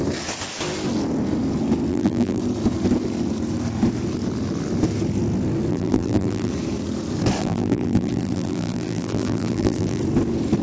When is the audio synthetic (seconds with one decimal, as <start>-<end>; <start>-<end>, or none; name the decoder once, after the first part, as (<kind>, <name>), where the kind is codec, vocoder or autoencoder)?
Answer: 1.9-2.4 (vocoder, BigVGAN v2); 5.7-6.5; 7.4-10.0